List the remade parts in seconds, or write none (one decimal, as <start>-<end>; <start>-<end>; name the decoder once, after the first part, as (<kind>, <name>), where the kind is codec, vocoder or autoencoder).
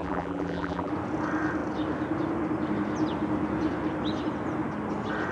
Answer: 0.0-0.9 (vocoder, BigVGAN v2)